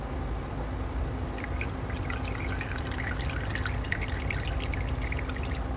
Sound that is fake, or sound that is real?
real